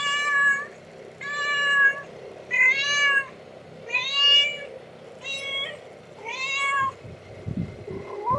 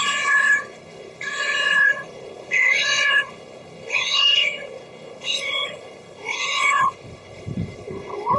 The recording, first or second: first